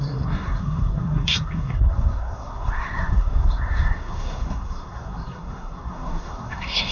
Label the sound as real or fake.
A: fake